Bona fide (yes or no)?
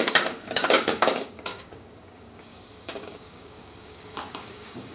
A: no